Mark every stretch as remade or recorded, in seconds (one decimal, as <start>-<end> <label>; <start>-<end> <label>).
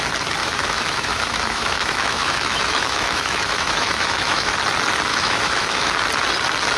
0.0-0.4 recorded; 0.4-4.5 remade; 4.5-5.1 recorded; 5.1-5.9 remade; 5.9-6.8 recorded